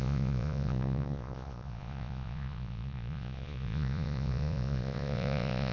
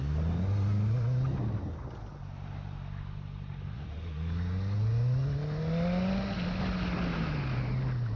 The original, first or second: second